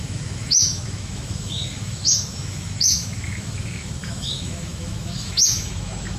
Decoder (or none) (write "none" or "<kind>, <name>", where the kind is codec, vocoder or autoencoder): autoencoder, DAC-VAE